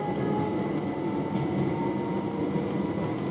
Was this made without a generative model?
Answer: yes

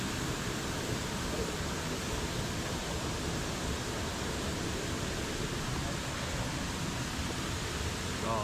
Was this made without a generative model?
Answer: yes